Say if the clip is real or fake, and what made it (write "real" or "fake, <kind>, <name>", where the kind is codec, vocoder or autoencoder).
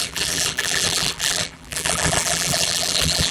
fake, vocoder, BigVGAN v2